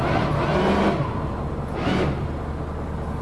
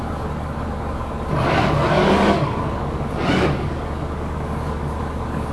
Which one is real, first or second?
first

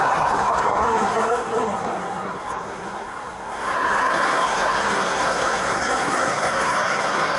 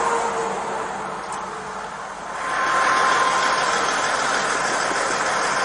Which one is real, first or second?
second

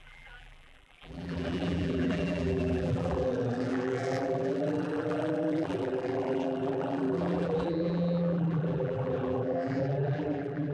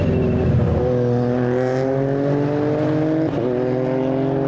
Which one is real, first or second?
second